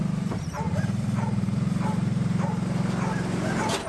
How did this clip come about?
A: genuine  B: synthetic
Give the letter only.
B